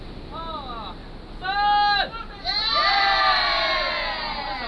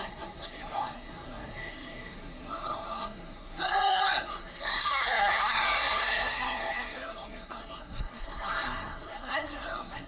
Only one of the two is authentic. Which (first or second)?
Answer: first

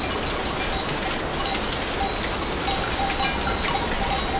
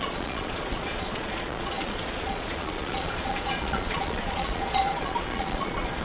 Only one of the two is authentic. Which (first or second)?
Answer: first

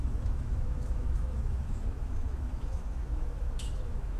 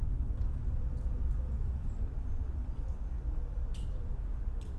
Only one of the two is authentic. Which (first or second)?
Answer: second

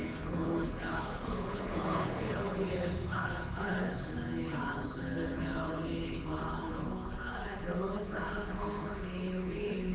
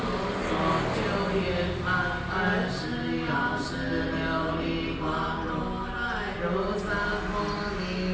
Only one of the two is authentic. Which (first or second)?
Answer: second